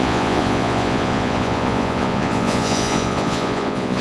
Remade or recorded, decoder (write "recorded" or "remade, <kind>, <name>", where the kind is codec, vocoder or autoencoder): remade, vocoder, Vocos